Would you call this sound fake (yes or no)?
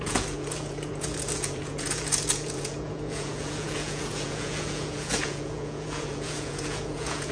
yes